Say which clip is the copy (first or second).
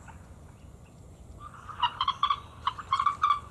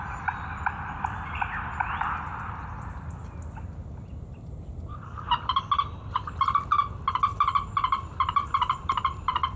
first